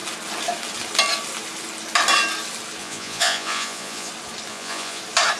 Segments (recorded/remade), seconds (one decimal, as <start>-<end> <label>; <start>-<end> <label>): 0.0-2.8 recorded; 2.8-4.1 remade; 4.1-4.5 recorded; 4.5-5.0 remade; 5.0-5.4 recorded